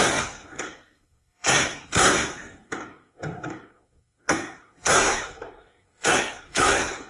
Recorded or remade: remade